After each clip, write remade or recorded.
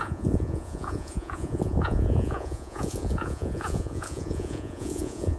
remade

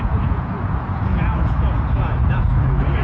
remade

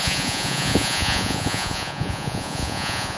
remade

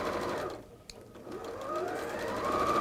recorded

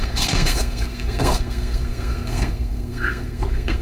remade